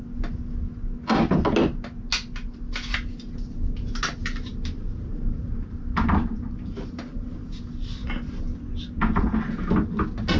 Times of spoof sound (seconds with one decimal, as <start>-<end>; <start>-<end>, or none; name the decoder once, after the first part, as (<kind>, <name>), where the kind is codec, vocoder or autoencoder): 4.2-7.6 (vocoder, BigVGAN v2)